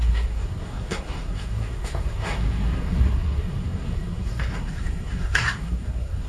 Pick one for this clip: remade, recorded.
remade